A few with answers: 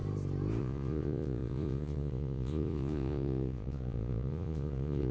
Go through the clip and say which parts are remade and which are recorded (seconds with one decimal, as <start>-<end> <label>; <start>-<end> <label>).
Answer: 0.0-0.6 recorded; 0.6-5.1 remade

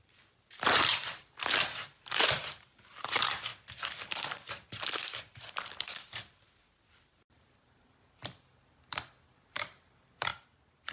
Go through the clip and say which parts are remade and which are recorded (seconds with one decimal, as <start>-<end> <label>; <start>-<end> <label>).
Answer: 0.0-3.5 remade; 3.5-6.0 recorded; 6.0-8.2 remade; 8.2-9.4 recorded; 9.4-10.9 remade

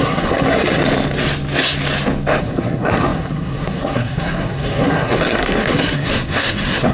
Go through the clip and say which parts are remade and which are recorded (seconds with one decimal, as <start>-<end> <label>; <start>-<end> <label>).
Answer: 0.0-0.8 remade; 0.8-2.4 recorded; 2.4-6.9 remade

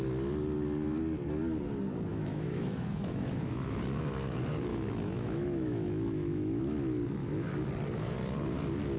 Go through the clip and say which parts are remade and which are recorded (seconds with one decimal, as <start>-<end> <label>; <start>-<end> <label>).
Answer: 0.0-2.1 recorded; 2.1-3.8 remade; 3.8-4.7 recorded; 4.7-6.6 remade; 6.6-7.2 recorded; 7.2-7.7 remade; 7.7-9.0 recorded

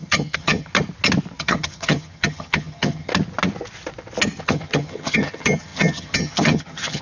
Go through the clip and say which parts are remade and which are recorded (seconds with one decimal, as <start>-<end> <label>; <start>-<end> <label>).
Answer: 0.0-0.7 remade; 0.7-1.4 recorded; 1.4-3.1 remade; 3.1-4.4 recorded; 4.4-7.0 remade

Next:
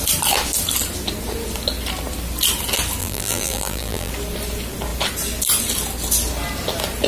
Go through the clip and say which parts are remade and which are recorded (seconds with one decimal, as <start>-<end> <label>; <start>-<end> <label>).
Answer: 0.0-3.0 recorded; 3.0-4.1 remade; 4.1-7.1 recorded